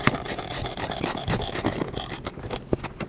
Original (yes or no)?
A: yes